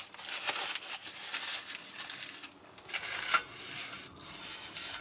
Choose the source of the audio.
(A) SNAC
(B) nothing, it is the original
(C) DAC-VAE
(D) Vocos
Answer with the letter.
B